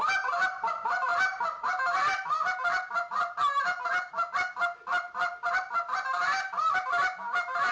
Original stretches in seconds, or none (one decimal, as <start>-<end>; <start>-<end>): 0.0-7.7